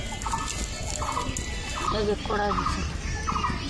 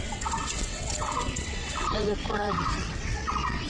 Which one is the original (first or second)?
first